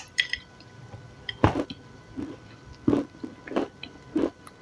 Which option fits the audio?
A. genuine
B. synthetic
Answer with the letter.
B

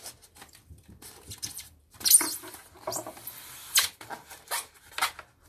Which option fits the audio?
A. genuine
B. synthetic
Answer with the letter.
B